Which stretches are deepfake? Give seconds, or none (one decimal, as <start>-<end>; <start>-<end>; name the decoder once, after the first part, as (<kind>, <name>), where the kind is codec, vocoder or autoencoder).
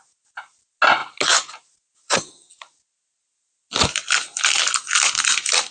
none